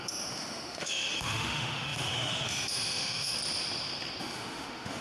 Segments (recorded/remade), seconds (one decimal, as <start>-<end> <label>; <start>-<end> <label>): 0.0-3.4 remade; 3.4-4.2 recorded; 4.2-5.0 remade